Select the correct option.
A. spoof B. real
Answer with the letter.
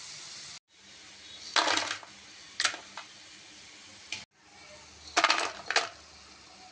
B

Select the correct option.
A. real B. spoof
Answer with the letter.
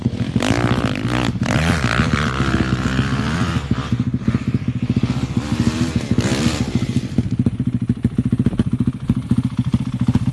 A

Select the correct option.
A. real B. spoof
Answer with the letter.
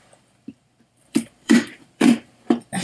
B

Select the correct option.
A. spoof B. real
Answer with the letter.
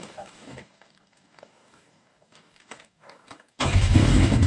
A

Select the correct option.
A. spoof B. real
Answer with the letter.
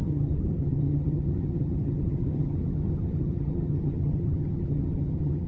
A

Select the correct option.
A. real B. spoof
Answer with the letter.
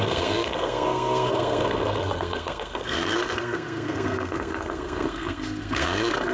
B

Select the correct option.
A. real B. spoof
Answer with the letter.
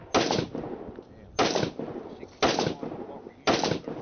A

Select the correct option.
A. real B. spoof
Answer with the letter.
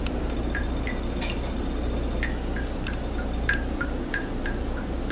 A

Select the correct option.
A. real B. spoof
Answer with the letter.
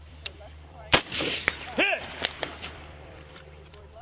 B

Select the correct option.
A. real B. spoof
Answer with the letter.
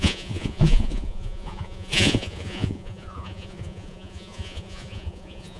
B